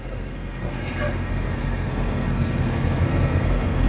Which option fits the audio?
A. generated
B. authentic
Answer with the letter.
A